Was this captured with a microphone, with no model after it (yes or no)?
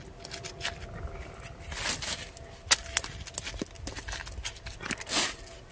yes